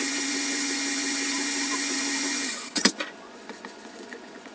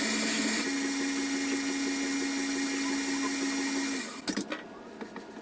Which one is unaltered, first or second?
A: second